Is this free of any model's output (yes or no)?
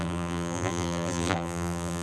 no